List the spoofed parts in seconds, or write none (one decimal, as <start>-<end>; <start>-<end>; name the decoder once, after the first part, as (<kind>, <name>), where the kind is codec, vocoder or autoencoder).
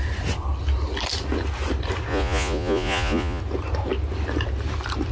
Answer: 2.1-3.4 (vocoder, Vocos)